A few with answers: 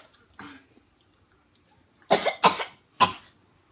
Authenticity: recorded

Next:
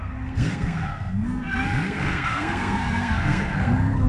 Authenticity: remade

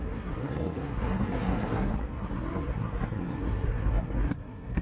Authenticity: remade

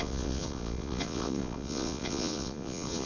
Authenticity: remade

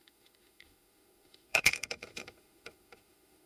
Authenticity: remade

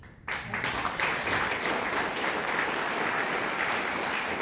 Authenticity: recorded